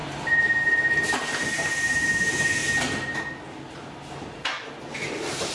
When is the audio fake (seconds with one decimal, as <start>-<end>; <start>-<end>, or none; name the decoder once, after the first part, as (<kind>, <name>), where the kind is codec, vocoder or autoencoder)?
0.0-2.6 (vocoder, BigVGAN v2); 4.7-5.5